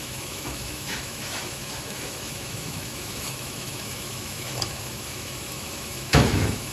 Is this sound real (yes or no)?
no